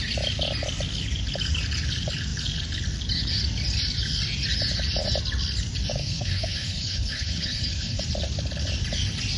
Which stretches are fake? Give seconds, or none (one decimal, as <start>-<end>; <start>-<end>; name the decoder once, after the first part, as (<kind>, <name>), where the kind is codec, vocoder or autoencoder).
6.0-8.0 (codec, HILCodec)